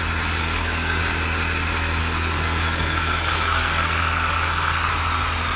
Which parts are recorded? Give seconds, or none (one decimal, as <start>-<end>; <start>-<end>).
0.0-0.4; 1.0-2.0; 4.9-5.6